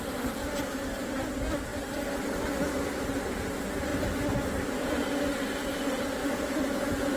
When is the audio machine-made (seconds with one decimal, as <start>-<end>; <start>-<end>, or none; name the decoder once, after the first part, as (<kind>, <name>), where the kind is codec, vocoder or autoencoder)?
6.2-7.2 (vocoder, Vocos)